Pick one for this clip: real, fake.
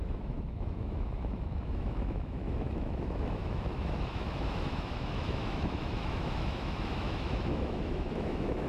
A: fake